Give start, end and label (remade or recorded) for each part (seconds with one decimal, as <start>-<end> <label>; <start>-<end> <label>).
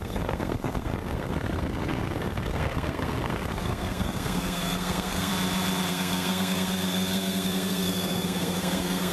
0.0-5.3 remade; 5.3-5.9 recorded; 5.9-9.1 remade